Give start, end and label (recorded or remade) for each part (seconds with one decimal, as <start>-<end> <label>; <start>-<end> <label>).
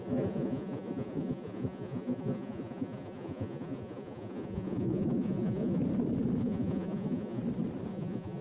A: 0.0-5.8 remade; 5.8-6.4 recorded; 6.4-7.4 remade; 7.4-7.9 recorded; 7.9-8.4 remade